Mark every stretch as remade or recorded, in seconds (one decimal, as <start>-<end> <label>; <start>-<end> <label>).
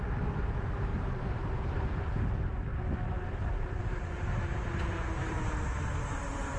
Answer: 0.0-6.6 recorded